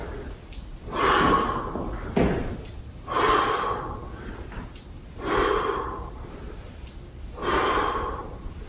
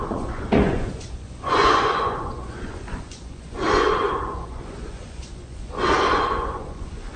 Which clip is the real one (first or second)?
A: first